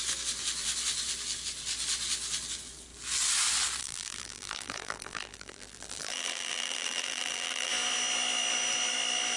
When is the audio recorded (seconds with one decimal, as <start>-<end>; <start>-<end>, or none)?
0.0-3.8; 7.7-9.4